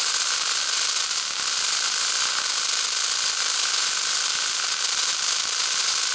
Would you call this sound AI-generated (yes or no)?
no